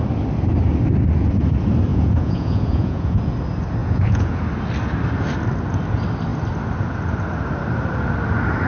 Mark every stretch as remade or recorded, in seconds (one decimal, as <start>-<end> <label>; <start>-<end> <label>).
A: 0.0-1.9 recorded; 1.9-3.2 remade; 3.2-3.8 recorded; 3.8-4.4 remade; 4.4-8.7 recorded